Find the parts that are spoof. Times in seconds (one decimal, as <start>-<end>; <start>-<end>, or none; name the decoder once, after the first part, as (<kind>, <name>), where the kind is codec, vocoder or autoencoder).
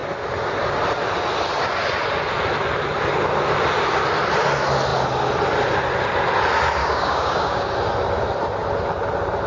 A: 6.8-7.7 (codec, DAC)